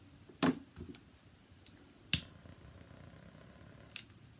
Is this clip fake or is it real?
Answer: real